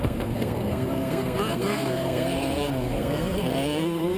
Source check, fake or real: fake